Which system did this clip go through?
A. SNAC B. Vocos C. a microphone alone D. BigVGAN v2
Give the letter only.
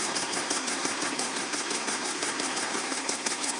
A